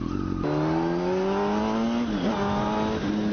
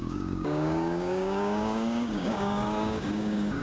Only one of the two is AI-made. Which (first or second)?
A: second